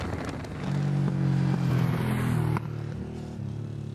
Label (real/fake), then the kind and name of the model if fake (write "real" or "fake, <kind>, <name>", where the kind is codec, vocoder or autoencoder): real